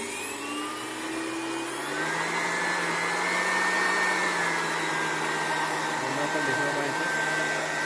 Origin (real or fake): real